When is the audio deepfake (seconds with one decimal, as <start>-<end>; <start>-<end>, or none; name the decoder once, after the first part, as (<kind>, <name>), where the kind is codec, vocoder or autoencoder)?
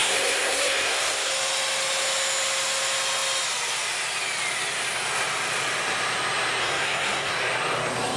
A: 0.0-1.3 (codec, SNAC); 6.6-7.3